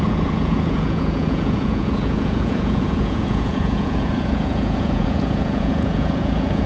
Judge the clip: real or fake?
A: fake